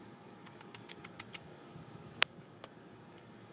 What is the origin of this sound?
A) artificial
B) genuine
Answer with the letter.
A